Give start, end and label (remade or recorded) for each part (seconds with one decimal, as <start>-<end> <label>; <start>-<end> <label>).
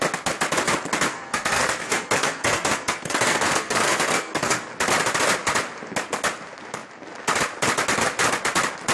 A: 0.0-1.1 recorded; 1.1-4.7 remade; 4.7-8.9 recorded